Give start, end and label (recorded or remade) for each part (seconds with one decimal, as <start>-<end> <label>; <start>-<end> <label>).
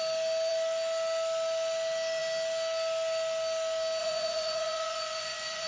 0.0-4.0 recorded; 4.0-5.7 remade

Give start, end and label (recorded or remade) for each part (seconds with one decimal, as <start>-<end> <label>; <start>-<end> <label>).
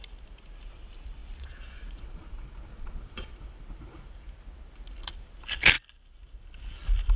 0.0-1.2 recorded; 1.2-2.3 remade; 2.3-2.7 recorded; 2.7-3.3 remade; 3.3-7.2 recorded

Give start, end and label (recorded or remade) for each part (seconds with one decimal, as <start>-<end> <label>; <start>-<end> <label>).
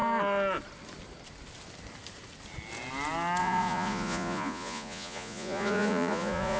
0.0-3.4 recorded; 3.4-6.6 remade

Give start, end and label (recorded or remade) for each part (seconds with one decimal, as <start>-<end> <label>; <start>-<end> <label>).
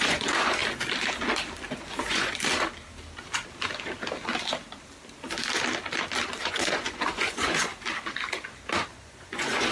0.0-0.6 remade; 0.6-1.7 recorded; 1.7-2.3 remade; 2.3-6.4 recorded; 6.4-7.7 remade; 7.7-8.9 recorded; 8.9-9.7 remade